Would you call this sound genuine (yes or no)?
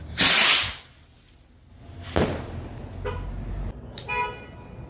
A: yes